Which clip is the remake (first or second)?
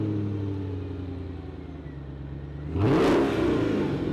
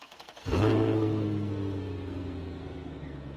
second